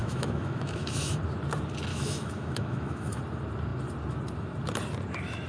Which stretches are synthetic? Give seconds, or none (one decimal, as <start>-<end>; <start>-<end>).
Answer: 0.0-1.2; 1.9-3.2